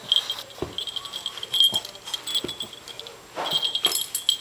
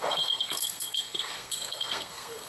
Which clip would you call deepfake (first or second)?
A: second